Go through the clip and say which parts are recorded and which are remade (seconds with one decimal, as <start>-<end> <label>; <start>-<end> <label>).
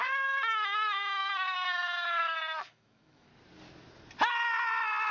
0.0-3.3 remade; 3.3-5.1 recorded